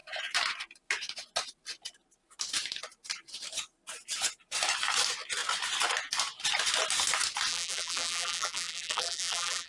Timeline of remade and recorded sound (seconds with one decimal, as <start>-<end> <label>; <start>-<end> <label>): 0.0-7.5 recorded; 7.5-9.7 remade